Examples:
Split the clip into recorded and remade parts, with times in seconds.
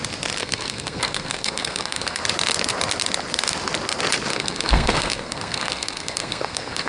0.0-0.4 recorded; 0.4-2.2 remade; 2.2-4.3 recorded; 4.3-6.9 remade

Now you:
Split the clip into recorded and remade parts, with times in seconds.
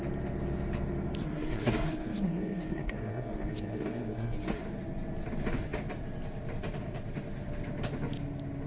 0.0-1.2 recorded; 1.2-4.6 remade; 4.6-8.7 recorded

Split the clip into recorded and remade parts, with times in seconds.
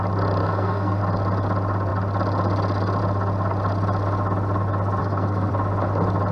0.0-0.4 recorded; 0.4-1.0 remade; 1.0-5.0 recorded; 5.0-5.5 remade; 5.5-6.3 recorded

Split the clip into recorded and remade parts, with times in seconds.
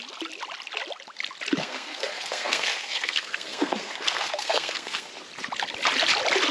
0.0-1.6 recorded; 1.6-5.1 remade; 5.1-6.5 recorded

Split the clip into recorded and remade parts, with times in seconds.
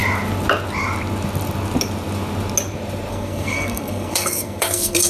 0.0-3.1 recorded; 3.1-5.1 remade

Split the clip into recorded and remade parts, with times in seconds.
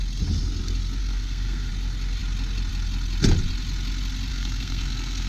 0.0-1.0 recorded; 1.0-1.7 remade; 1.7-4.3 recorded; 4.3-5.3 remade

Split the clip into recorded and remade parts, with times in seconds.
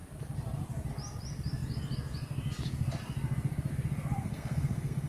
0.0-4.2 recorded; 4.2-5.1 remade